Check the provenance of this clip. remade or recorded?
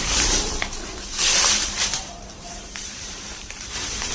remade